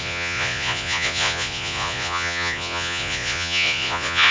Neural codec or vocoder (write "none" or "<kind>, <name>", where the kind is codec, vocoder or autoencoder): vocoder, Vocos